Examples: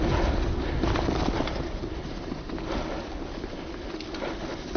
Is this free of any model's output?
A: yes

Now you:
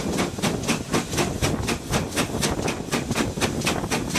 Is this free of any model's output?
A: yes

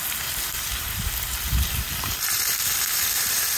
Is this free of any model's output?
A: no